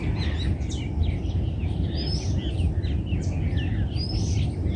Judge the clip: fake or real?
real